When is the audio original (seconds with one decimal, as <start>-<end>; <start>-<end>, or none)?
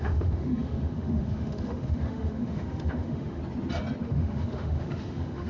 3.4-4.0